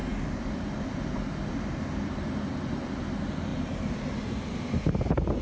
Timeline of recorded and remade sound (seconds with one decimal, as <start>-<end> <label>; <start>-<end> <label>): 0.0-5.4 recorded